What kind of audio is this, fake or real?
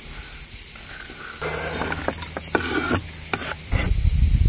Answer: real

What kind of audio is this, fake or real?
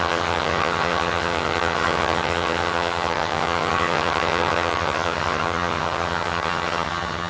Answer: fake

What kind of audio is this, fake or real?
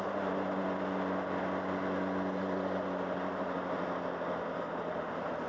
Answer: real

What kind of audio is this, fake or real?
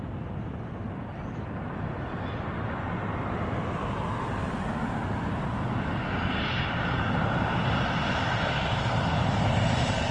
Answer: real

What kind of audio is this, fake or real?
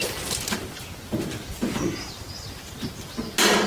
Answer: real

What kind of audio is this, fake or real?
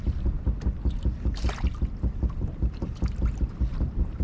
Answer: fake